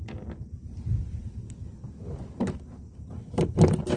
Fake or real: real